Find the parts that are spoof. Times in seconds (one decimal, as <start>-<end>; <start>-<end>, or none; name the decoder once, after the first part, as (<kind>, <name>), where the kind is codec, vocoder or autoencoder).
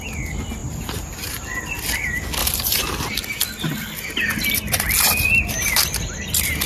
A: 0.6-1.6 (vocoder, BigVGAN v2); 2.4-3.4